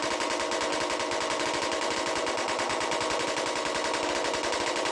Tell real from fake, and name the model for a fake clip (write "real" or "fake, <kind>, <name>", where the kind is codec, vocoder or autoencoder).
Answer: real